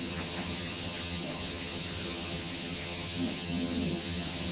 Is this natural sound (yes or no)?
no